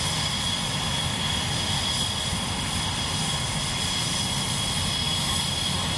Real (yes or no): yes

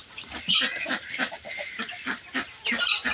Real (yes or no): yes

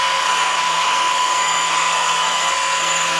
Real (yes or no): no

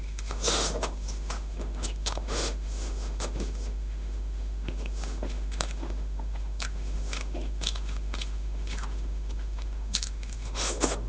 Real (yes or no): no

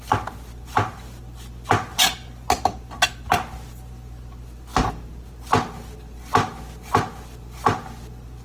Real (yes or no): yes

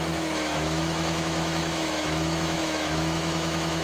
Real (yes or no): no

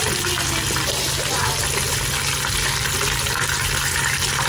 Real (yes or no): yes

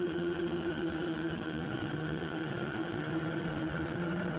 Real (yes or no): no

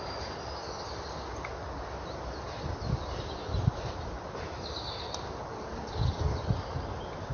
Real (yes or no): yes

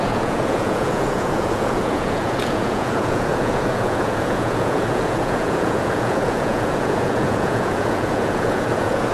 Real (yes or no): no